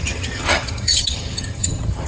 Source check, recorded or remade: remade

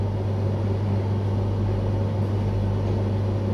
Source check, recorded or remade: recorded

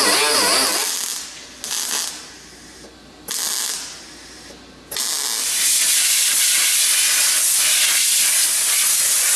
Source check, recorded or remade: recorded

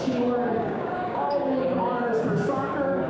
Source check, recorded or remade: remade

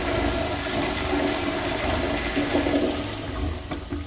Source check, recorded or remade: recorded